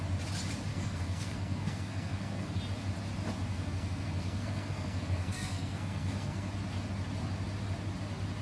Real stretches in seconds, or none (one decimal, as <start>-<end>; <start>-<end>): 0.0-0.7; 2.6-3.5; 6.5-8.4